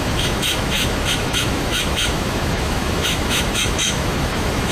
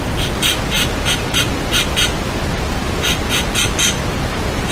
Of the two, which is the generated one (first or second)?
first